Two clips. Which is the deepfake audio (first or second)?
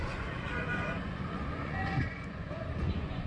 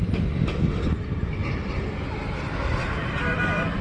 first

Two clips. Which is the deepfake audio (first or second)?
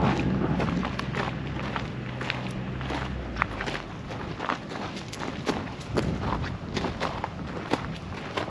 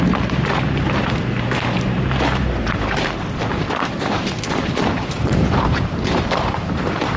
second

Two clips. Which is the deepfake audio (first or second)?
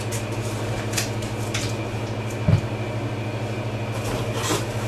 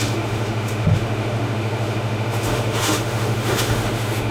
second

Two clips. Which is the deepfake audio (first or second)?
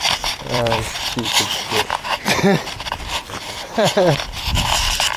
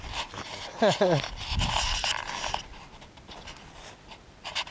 first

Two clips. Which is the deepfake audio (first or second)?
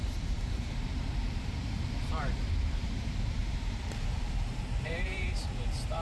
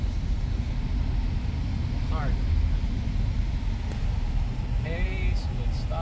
first